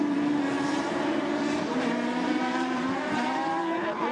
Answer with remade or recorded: remade